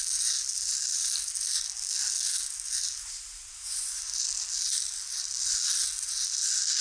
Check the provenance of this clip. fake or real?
real